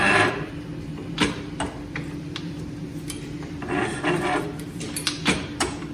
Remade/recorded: remade